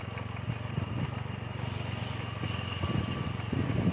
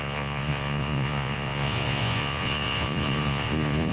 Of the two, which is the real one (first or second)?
first